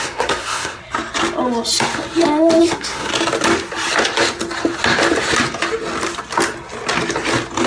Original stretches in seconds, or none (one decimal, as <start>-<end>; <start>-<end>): 0.8-2.6; 3.1-7.7